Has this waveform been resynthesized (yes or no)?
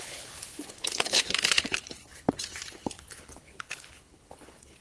yes